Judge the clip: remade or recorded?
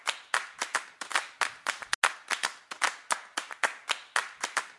recorded